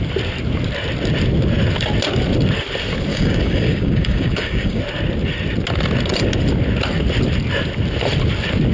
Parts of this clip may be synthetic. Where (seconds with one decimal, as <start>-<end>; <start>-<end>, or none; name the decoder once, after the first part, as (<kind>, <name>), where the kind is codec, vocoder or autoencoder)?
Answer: 3.1-4.8 (codec, DAC)